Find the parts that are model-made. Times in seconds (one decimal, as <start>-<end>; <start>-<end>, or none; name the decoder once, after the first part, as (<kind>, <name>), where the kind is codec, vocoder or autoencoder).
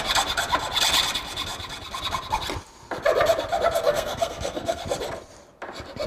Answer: 3.8-4.8 (codec, SNAC)